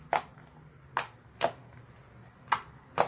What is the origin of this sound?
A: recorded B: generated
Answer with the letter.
A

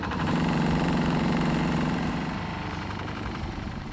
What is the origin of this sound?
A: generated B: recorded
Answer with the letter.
A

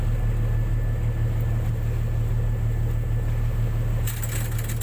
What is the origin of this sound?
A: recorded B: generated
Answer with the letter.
A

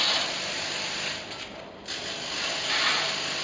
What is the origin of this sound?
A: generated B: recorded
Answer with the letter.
B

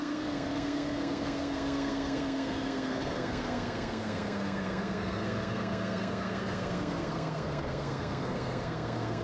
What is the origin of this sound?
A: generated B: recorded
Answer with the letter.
A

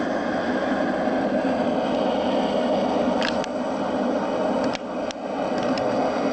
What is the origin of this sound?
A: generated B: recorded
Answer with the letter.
B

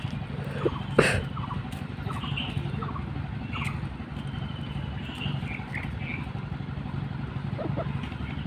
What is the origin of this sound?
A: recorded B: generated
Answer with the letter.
A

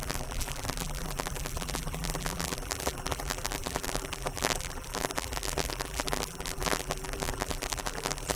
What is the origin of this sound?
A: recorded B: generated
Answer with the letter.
B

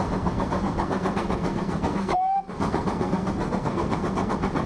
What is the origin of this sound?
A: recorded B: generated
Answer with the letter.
B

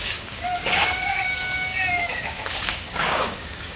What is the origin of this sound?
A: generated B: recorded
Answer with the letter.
A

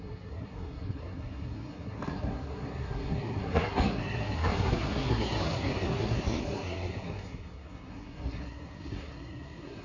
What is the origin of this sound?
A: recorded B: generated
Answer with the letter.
B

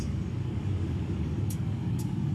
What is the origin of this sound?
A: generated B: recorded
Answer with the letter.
A